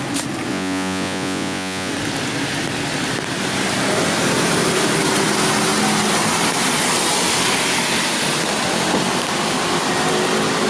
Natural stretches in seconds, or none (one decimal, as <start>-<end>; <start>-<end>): 0.0-0.5; 1.9-10.7